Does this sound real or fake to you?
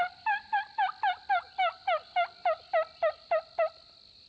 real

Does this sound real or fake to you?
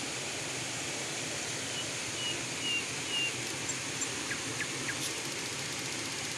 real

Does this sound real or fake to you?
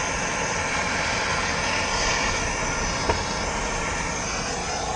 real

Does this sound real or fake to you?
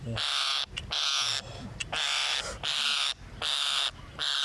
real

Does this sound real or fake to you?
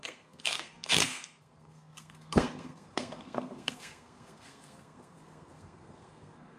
fake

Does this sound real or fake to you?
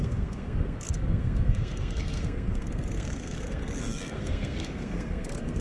fake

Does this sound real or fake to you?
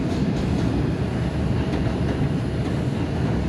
real